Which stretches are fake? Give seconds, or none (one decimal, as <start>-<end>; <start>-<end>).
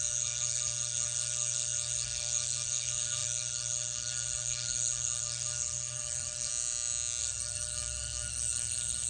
0.0-6.5; 7.2-9.1